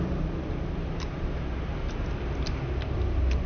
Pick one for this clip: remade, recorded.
recorded